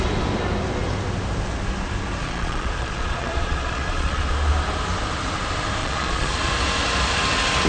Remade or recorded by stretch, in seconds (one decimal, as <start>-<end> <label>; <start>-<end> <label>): 0.0-2.2 recorded; 2.2-4.2 remade; 4.2-5.8 recorded; 5.8-6.4 remade; 6.4-7.7 recorded